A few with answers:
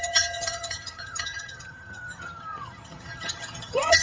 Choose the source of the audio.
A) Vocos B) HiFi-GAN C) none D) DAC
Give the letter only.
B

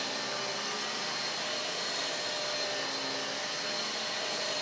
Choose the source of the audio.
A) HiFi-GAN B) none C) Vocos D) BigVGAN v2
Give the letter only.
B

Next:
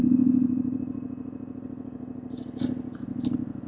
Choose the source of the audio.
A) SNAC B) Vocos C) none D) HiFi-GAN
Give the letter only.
C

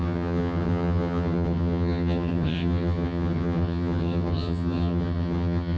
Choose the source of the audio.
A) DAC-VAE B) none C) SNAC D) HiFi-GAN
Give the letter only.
D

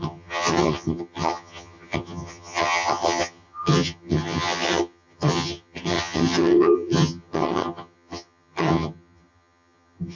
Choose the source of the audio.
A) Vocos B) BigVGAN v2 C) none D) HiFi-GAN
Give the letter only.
D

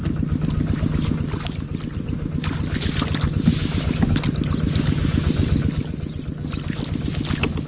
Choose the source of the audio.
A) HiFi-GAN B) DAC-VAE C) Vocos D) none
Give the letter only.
D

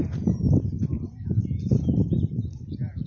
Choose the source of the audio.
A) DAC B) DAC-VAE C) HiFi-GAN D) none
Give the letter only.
D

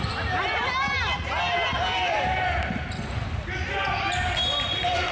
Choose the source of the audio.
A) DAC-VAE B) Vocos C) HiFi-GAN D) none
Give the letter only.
D